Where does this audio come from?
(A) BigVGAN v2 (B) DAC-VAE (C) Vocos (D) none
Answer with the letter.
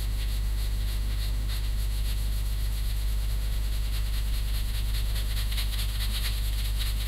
B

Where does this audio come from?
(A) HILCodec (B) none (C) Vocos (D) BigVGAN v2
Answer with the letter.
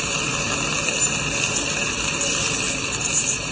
B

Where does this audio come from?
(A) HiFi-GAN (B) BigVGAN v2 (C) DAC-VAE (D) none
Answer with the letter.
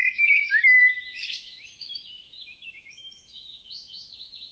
C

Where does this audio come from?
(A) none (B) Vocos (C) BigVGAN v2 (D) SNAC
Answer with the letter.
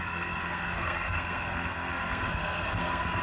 D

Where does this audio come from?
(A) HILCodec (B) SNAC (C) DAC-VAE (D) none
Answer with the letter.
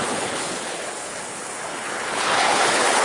A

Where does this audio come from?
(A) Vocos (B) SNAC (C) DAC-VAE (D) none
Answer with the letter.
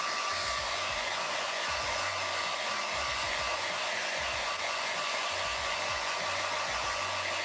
A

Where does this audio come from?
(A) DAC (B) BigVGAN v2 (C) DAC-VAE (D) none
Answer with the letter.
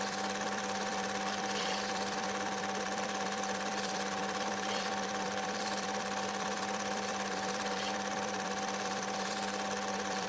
B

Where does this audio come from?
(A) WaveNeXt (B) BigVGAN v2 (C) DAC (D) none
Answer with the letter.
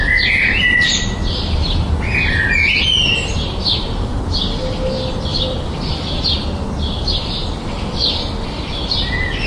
D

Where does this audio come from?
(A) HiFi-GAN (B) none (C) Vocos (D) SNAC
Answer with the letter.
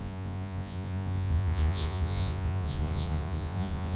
C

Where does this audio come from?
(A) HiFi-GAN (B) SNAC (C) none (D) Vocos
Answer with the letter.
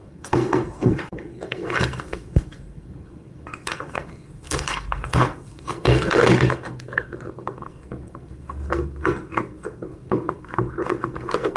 B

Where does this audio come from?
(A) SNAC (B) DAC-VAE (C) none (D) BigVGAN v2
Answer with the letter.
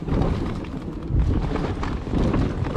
C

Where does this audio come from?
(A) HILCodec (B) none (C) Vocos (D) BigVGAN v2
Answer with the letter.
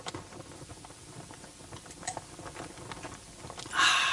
B